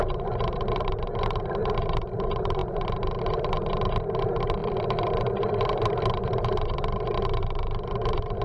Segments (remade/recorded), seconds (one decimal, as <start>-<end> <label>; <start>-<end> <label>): 0.0-8.4 remade